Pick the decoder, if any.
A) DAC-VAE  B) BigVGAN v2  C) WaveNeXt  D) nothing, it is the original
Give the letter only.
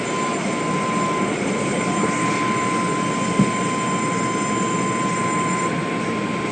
D